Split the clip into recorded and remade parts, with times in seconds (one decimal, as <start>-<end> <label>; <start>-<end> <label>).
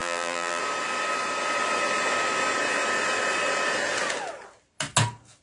0.0-0.6 remade; 0.6-5.4 recorded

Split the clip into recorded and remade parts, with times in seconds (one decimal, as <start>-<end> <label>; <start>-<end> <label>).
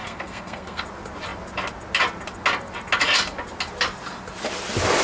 0.0-0.8 remade; 0.8-5.0 recorded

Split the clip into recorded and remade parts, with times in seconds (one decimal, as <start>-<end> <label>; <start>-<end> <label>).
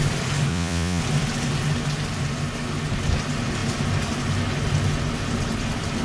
0.0-0.5 recorded; 0.5-1.0 remade; 1.0-6.0 recorded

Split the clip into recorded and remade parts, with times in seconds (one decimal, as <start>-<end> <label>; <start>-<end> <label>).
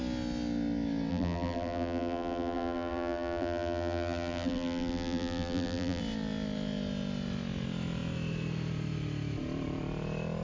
0.0-1.1 recorded; 1.1-6.0 remade; 6.0-10.4 recorded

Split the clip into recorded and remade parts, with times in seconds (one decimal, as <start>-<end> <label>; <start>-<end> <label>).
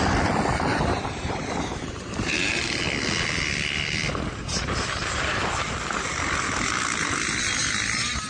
0.0-0.7 recorded; 0.7-2.5 remade; 2.5-4.4 recorded; 4.4-5.5 remade; 5.5-8.3 recorded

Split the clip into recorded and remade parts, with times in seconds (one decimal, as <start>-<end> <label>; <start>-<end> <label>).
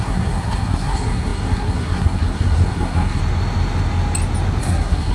0.0-3.2 remade; 3.2-4.6 recorded; 4.6-5.1 remade